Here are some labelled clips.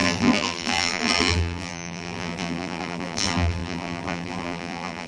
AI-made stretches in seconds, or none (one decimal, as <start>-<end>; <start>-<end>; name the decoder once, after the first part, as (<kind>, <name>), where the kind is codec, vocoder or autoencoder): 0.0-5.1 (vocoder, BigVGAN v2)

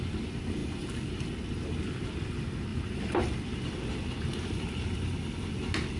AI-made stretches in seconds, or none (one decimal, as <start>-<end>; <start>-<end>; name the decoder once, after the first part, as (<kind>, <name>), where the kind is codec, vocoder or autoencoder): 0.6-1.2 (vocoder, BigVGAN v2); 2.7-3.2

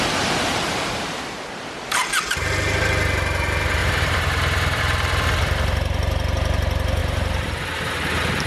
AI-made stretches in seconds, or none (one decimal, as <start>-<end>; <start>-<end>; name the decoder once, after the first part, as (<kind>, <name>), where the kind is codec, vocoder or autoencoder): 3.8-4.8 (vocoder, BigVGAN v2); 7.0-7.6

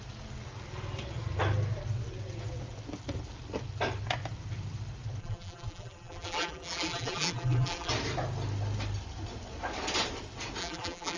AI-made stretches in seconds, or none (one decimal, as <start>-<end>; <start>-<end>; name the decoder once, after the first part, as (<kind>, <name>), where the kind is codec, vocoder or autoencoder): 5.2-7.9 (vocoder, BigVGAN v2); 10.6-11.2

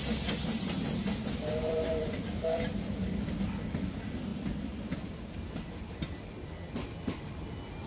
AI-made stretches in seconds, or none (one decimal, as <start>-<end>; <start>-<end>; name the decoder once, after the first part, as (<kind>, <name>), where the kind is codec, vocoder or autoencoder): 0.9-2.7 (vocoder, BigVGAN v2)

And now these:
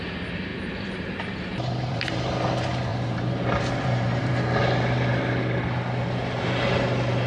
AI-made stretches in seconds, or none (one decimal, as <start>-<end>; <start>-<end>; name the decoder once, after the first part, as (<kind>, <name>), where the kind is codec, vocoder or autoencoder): 0.5-2.3 (vocoder, BigVGAN v2); 2.9-4.4

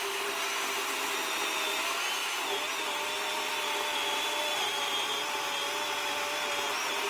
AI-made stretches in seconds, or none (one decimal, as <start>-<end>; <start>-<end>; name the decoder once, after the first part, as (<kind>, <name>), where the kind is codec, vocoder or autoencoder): none